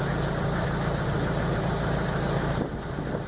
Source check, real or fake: real